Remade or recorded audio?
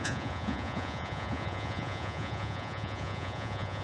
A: remade